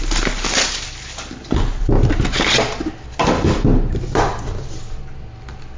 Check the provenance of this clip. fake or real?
real